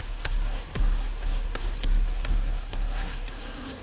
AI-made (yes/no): yes